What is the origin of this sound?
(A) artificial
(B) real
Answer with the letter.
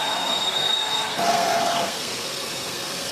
A